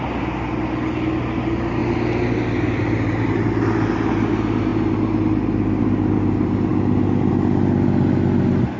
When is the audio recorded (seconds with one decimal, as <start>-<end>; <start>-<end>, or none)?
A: 0.0-8.8